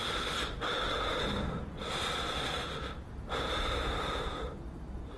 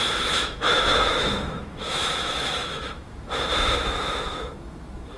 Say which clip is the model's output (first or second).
second